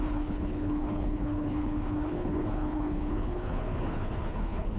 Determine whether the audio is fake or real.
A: fake